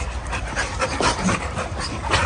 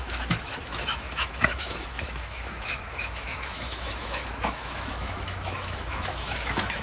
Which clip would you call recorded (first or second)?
first